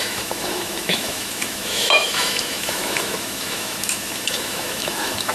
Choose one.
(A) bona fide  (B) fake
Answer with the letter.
B